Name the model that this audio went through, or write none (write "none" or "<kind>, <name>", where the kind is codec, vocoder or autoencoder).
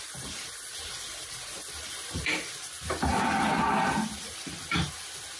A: vocoder, BigVGAN v2